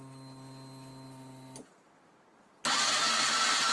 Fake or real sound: real